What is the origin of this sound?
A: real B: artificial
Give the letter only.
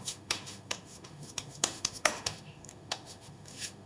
B